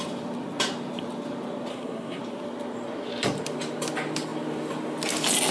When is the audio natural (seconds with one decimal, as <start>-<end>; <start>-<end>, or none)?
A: 0.0-1.7; 2.2-5.5